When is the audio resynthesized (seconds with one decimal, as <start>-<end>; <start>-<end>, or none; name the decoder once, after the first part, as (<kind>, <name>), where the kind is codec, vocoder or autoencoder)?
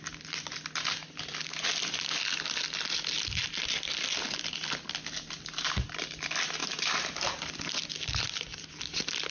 none